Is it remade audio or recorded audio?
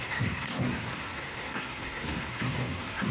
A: remade